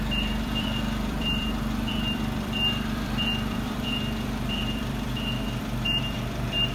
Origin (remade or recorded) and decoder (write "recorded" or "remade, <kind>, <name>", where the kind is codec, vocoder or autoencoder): remade, vocoder, BigVGAN v2